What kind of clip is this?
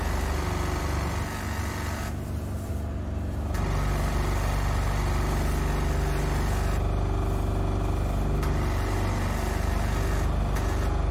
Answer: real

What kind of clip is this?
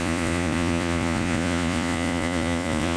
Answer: fake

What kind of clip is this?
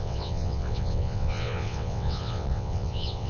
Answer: fake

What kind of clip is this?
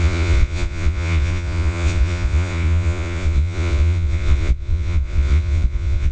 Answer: fake